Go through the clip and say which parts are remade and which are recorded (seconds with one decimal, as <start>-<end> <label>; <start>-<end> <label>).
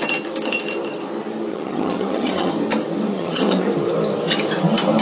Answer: 0.0-1.5 recorded; 1.5-2.5 remade; 2.5-3.1 recorded; 3.1-3.7 remade; 3.7-5.0 recorded